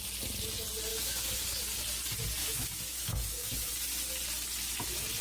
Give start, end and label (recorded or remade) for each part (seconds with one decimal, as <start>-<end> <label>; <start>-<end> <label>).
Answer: 0.0-0.9 recorded; 0.9-1.6 remade; 1.6-2.4 recorded; 2.4-3.7 remade; 3.7-5.2 recorded

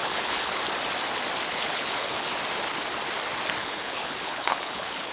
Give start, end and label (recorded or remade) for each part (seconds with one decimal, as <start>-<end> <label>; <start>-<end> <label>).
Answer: 0.0-0.6 remade; 0.6-1.5 recorded; 1.5-2.3 remade; 2.3-3.6 recorded; 3.6-5.1 remade

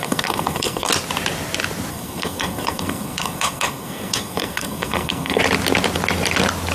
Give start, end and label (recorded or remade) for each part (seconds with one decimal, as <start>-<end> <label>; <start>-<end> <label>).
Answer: 0.0-0.9 remade; 0.9-1.9 recorded; 1.9-5.4 remade; 5.4-6.7 recorded

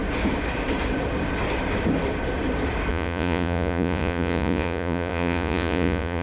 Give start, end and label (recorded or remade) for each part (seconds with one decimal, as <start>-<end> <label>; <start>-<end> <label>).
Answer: 0.0-2.9 recorded; 2.9-6.2 remade